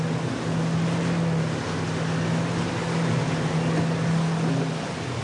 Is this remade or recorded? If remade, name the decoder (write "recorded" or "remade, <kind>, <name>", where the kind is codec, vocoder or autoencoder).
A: recorded